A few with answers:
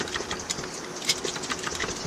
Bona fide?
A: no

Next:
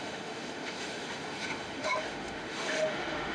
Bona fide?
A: no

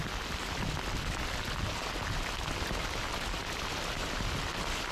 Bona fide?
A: yes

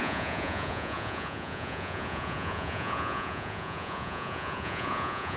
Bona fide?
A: no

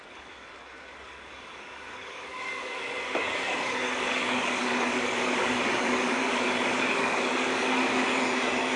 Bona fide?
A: no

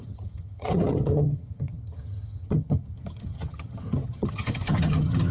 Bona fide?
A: no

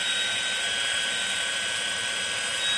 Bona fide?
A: yes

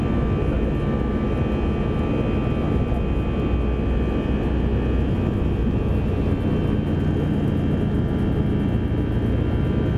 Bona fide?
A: yes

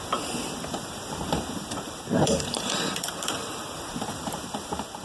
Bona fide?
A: no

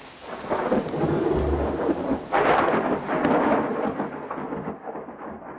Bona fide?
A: yes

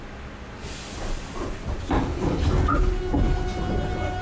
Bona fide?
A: yes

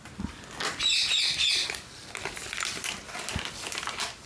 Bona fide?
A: yes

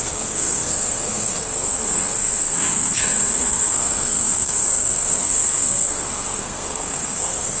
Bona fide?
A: no